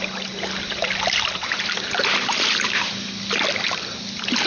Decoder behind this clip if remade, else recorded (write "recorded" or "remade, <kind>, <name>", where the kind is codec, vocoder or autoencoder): recorded